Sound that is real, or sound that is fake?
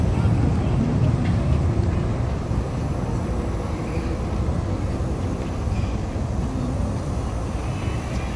real